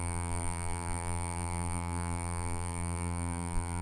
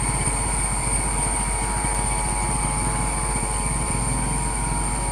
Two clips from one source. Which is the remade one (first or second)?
first